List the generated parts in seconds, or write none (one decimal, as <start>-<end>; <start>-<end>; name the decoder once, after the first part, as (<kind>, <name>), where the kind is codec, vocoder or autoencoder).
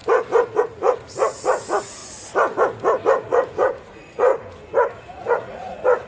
0.6-2.0 (vocoder, Vocos); 3.0-4.3; 5.1-6.1